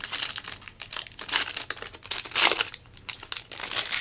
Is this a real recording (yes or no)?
yes